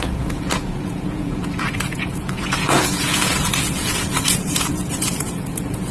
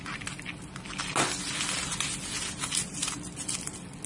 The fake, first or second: first